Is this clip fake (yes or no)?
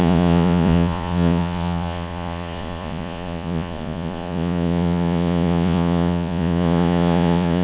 yes